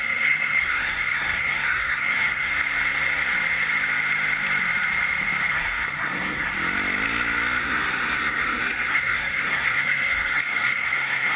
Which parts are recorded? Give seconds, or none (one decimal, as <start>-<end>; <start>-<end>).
2.5-5.5; 6.5-7.6